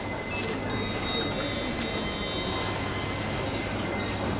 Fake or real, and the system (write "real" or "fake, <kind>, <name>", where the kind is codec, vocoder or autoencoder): real